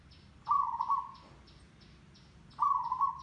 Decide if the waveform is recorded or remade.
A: recorded